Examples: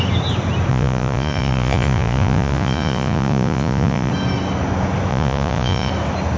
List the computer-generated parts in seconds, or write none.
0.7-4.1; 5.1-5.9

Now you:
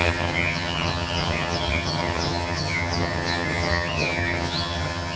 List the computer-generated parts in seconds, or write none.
0.0-5.2

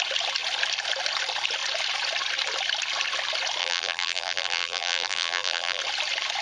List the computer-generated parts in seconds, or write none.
3.6-5.8

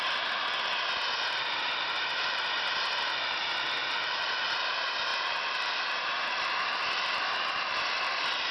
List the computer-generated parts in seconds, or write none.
none

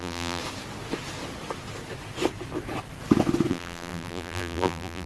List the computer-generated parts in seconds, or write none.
0.0-0.4; 3.5-5.1

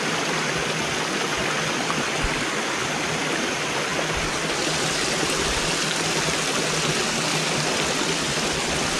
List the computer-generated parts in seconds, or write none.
none